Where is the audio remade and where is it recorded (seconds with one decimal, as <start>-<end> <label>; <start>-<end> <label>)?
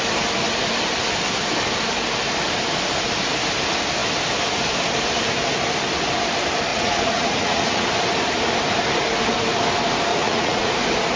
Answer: 0.0-6.7 recorded; 6.7-7.9 remade; 7.9-10.1 recorded; 10.1-10.7 remade; 10.7-11.2 recorded